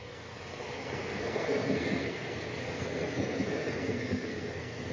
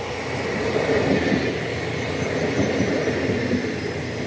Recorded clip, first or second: second